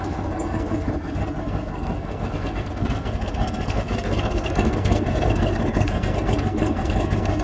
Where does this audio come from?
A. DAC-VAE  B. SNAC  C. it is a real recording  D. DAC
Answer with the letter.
B